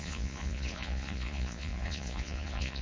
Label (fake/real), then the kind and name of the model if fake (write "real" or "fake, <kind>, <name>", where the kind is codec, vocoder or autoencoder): fake, vocoder, Vocos